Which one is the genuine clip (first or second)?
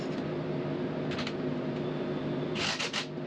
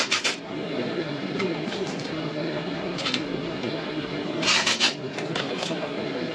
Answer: first